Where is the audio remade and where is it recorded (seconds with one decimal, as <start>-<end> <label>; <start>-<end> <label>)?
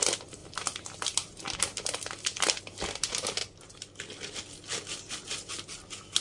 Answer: 0.0-0.4 recorded; 0.4-2.6 remade; 2.6-6.2 recorded